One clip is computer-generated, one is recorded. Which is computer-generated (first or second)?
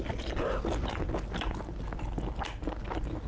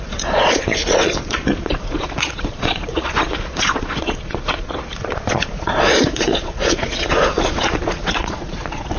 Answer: second